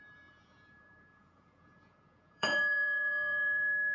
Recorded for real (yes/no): no